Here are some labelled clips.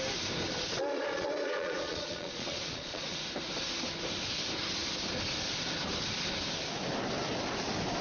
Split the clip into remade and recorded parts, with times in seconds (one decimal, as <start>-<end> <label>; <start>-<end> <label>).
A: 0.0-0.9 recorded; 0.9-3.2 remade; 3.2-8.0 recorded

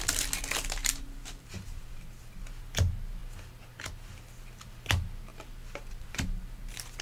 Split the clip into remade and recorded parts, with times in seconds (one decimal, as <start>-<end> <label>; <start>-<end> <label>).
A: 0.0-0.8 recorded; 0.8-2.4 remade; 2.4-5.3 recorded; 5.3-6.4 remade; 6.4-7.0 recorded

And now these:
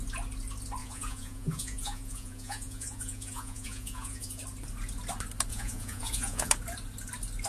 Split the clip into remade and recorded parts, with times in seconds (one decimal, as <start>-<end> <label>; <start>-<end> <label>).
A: 0.0-0.8 recorded; 0.8-4.4 remade; 4.4-5.5 recorded; 5.5-6.5 remade; 6.5-7.5 recorded

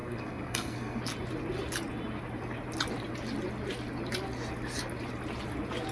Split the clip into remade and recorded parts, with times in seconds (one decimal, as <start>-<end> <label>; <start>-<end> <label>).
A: 0.0-1.0 remade; 1.0-5.9 recorded